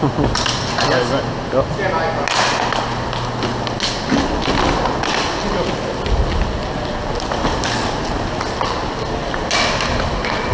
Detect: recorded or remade recorded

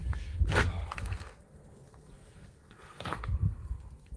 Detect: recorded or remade remade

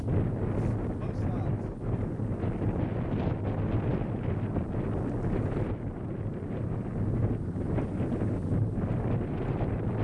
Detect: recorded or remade recorded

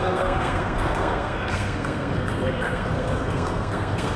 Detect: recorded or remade remade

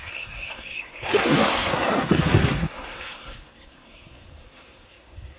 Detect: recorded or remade remade